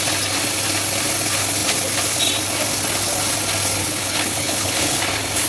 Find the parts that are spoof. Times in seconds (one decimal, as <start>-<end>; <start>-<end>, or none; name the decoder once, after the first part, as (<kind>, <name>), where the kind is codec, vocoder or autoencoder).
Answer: 3.8-5.0 (codec, HILCodec)